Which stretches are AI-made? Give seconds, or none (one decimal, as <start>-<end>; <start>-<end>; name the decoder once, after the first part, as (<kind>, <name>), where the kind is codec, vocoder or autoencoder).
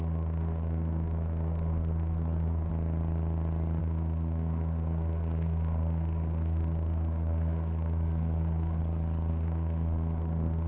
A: 0.0-2.7 (codec, SNAC); 3.8-8.8; 9.3-10.7